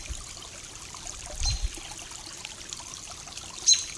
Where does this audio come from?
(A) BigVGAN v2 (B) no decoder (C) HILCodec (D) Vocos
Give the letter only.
B